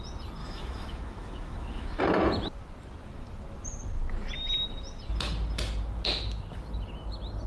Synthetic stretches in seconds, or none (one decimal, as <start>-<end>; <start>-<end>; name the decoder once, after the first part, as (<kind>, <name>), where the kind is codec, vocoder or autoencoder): 0.4-2.0 (autoencoder, DAC-VAE)